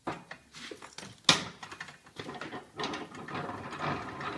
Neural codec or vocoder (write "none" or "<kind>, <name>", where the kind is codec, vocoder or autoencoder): none